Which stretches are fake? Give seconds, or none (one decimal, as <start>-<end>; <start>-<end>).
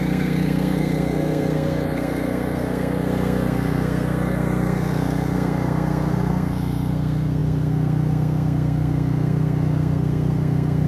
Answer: 0.0-10.9